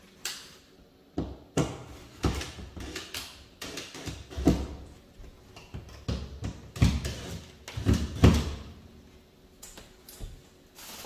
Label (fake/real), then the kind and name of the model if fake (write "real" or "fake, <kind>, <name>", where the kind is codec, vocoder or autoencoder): real